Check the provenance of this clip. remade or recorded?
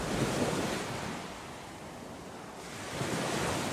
recorded